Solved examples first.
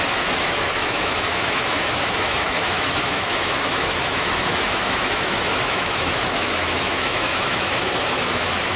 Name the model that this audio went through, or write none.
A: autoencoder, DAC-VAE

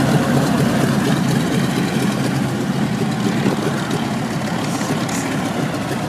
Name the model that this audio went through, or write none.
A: none